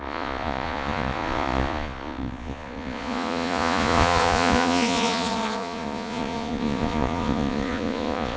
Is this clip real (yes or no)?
no